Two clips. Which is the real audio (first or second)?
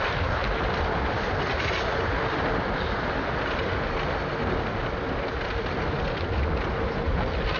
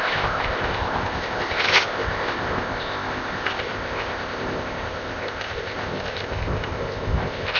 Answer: first